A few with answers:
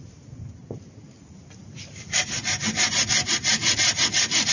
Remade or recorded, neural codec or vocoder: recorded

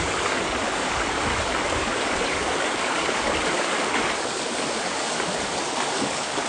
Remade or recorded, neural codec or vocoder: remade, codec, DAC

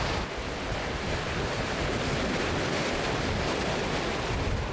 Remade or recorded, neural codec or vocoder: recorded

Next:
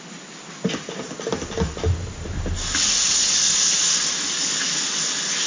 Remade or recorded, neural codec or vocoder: recorded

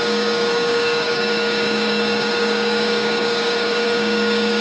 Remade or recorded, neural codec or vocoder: remade, codec, DAC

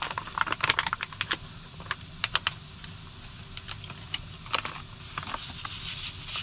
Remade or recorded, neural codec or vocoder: recorded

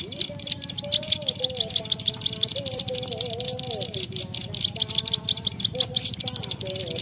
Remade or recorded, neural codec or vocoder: recorded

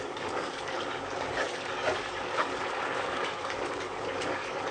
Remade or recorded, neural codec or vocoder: remade, codec, DAC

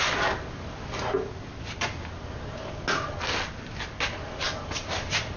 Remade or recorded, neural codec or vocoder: recorded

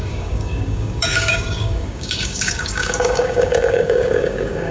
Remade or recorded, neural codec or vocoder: remade, codec, DAC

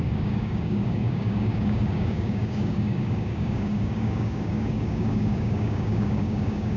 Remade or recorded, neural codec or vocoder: remade, codec, DAC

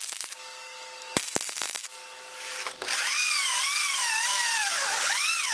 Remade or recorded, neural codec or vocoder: remade, codec, DAC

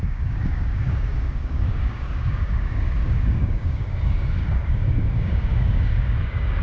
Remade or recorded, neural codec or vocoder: remade, codec, DAC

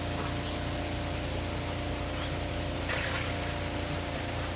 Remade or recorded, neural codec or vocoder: recorded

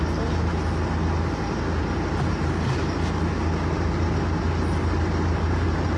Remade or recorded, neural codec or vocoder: recorded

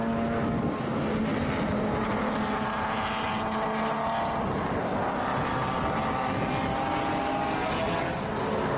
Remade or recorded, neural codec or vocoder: recorded